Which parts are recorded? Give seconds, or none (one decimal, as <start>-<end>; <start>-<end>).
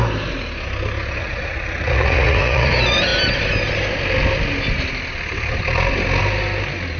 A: 0.0-1.2; 2.7-7.0